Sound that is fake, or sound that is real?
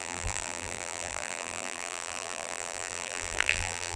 fake